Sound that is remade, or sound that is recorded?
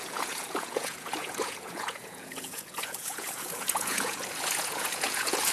remade